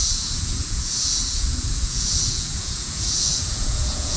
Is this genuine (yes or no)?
no